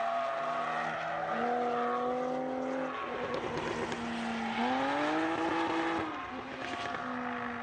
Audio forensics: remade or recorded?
recorded